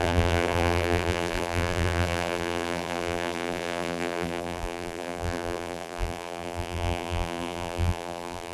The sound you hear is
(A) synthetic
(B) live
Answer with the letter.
A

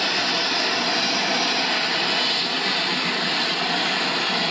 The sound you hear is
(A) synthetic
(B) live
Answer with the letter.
B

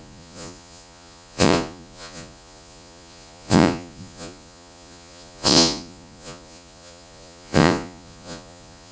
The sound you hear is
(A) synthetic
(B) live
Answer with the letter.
A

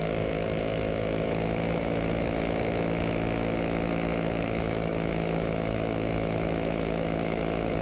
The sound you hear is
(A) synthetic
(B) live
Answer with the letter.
A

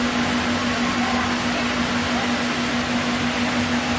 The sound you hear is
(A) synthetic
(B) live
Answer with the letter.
B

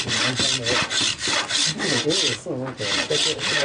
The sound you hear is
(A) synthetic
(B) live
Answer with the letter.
B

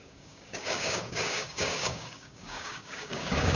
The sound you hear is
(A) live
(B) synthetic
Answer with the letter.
B